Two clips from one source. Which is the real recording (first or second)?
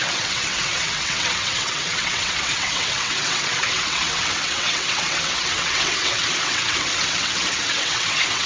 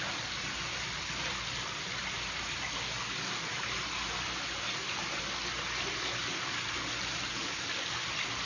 second